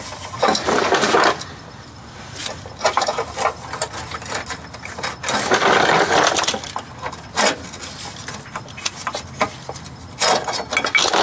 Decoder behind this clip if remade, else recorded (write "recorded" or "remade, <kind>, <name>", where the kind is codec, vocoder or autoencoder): recorded